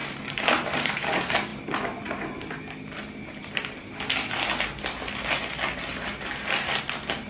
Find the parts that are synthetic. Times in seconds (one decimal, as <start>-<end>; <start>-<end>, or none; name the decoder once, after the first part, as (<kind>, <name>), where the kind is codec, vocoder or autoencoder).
0.0-1.1 (vocoder, BigVGAN v2)

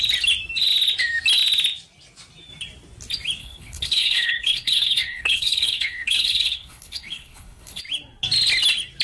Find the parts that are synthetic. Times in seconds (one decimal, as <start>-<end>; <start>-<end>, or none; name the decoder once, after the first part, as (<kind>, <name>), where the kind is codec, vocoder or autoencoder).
3.4-7.8 (codec, HILCodec)

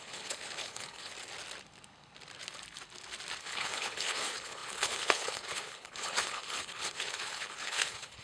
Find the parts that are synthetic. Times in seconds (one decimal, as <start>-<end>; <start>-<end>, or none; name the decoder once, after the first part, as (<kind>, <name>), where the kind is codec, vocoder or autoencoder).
0.0-1.1 (codec, HILCodec); 3.4-8.2

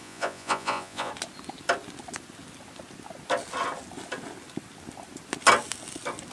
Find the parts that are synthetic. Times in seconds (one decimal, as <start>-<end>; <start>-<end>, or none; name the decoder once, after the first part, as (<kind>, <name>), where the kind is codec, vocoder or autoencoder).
0.0-1.1 (vocoder, Vocos)

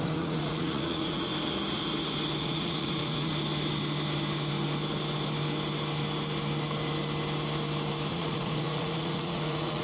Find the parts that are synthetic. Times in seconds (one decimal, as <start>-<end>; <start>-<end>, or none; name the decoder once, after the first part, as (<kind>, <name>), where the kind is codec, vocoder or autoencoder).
0.0-1.3 (vocoder, Vocos); 2.4-3.3; 8.1-9.8